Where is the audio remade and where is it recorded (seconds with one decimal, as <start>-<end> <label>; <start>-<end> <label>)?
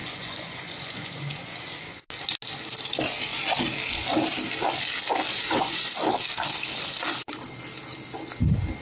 0.0-2.0 remade; 2.0-5.3 recorded; 5.3-5.9 remade; 5.9-8.8 recorded